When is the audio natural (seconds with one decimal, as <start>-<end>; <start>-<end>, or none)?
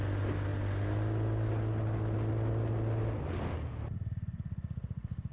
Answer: 0.0-5.3